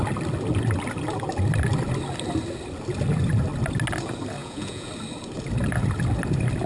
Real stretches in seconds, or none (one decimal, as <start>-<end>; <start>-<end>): 0.0-4.4; 4.9-6.7